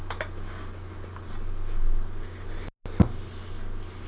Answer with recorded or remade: recorded